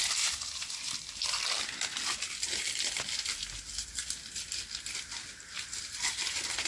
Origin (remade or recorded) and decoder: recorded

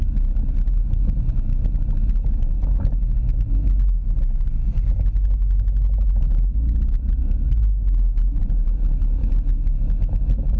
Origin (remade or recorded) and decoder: recorded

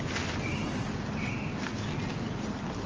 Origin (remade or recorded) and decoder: recorded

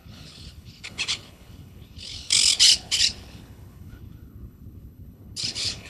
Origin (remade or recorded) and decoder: remade, codec, HILCodec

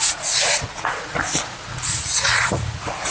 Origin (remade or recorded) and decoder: remade, vocoder, Vocos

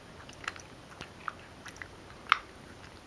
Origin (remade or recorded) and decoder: recorded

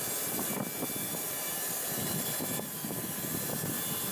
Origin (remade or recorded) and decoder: recorded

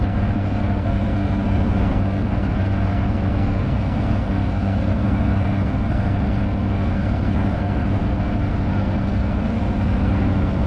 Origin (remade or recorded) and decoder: remade, codec, SNAC